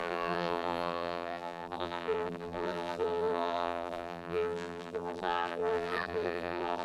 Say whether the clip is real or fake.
fake